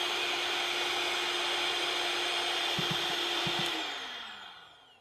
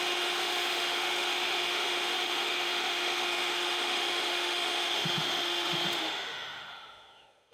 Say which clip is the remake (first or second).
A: second